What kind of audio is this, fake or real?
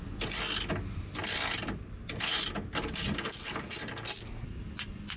real